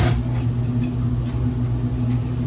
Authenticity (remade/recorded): recorded